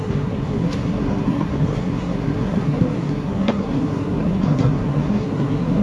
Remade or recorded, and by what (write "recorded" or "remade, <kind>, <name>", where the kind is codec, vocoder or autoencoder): remade, codec, SNAC